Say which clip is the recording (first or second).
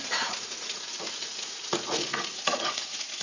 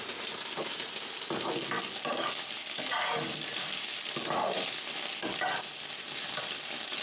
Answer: second